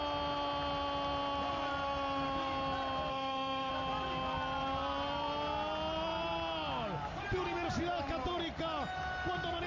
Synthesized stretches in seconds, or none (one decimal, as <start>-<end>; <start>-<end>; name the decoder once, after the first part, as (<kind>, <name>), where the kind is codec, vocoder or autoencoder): 3.1-3.7 (autoencoder, DAC-VAE)